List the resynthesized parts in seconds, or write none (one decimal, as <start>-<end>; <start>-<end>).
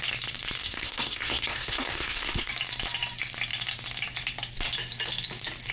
0.6-2.5